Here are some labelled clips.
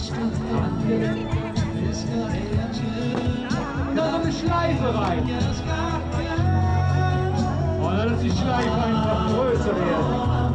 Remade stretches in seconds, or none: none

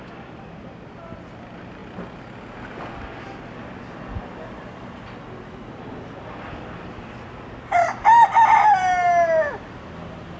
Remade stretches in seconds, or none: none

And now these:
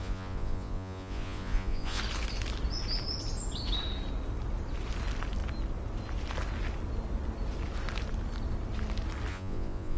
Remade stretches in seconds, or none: 0.0-2.0 (vocoder, Vocos); 9.3-10.0